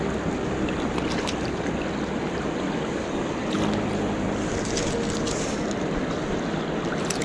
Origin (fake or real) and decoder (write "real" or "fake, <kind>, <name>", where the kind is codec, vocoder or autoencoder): real